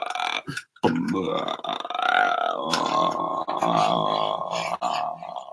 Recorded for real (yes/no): yes